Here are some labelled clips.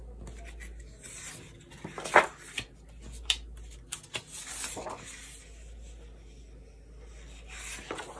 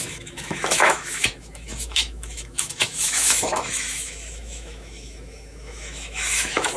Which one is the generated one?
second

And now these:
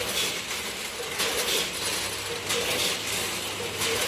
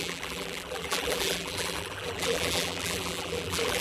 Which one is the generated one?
second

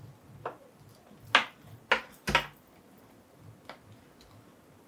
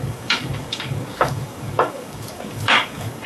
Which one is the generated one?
second